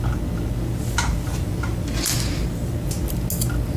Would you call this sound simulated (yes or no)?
no